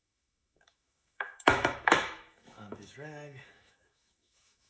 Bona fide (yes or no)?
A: no